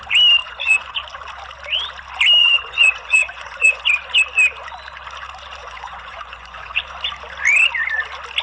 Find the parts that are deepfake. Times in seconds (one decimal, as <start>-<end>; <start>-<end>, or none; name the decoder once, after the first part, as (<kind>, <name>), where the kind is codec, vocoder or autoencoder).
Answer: 0.4-0.9 (vocoder, Vocos); 2.4-3.8; 5.6-6.8